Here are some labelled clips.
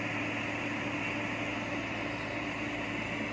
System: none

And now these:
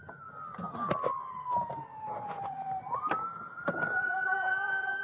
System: vocoder, BigVGAN v2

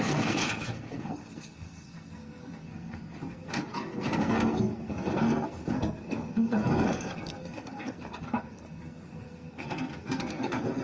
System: codec, SNAC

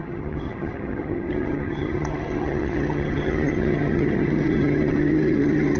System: vocoder, HiFi-GAN